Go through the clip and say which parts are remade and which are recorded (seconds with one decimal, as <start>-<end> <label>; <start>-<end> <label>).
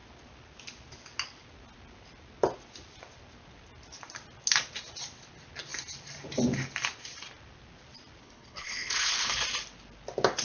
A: 0.0-8.2 recorded; 8.2-9.3 remade; 9.3-10.4 recorded